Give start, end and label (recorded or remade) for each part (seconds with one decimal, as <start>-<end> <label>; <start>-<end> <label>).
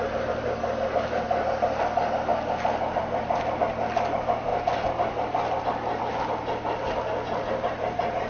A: 0.0-8.3 recorded